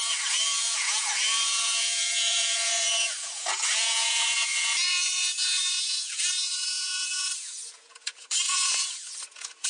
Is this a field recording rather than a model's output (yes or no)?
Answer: no